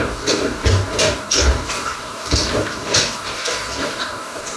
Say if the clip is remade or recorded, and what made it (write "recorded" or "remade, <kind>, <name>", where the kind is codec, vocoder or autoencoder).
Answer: remade, codec, DAC